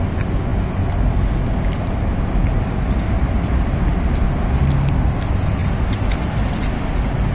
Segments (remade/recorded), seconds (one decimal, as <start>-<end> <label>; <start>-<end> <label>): 0.0-7.3 recorded